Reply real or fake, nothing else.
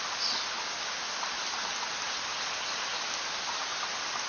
real